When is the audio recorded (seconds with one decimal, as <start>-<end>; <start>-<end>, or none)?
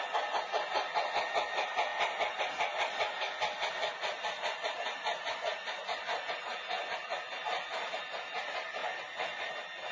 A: 0.0-9.9